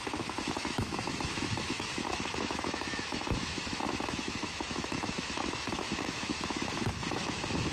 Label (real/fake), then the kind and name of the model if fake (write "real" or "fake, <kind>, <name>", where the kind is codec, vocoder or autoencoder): fake, autoencoder, DAC-VAE